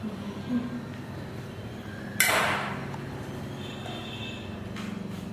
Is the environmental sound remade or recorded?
recorded